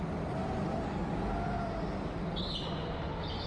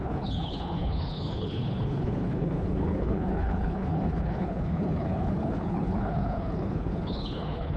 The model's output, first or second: second